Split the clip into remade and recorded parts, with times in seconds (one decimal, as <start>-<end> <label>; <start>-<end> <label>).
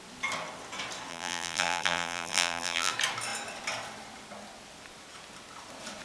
0.0-1.1 recorded; 1.1-2.9 remade; 2.9-6.0 recorded